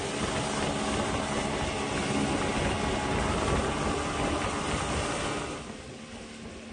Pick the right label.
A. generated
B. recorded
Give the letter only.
B